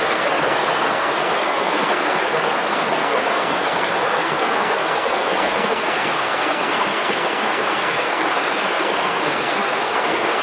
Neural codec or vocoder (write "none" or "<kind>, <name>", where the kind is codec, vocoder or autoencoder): codec, SNAC